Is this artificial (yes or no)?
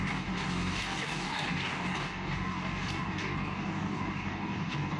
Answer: yes